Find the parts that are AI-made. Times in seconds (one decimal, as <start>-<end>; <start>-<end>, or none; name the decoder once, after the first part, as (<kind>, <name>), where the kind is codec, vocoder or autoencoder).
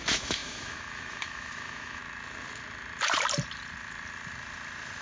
0.0-2.0 (autoencoder, DAC-VAE)